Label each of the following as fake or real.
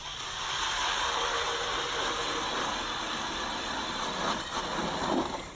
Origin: real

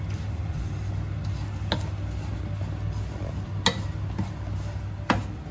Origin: real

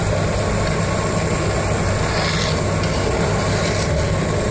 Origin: real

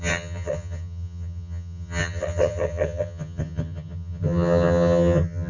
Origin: fake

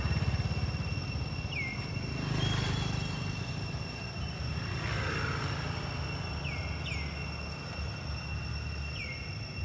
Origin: real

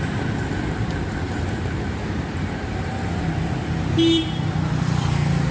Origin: real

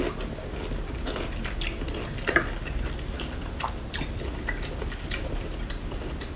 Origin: real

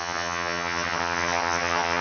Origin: fake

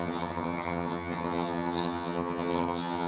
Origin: fake